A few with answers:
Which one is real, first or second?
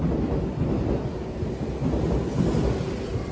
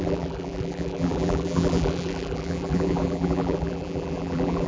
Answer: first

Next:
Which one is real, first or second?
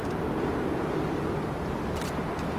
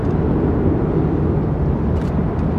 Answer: second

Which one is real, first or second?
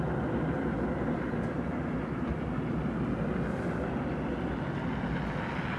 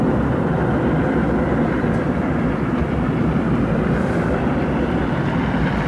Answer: first